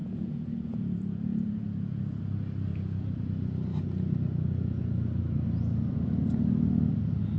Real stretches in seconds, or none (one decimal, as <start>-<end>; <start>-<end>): 2.2-2.7; 3.2-7.4